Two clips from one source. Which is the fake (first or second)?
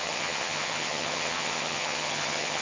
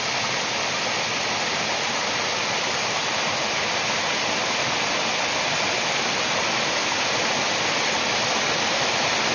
first